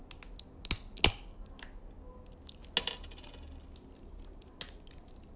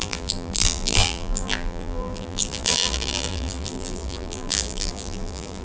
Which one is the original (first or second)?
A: first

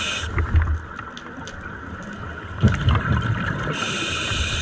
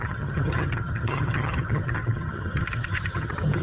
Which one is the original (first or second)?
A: first